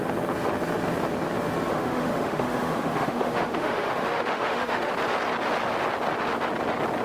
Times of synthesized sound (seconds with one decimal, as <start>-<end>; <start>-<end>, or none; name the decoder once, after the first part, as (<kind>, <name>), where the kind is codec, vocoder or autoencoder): 1.7-4.9 (autoencoder, DAC-VAE)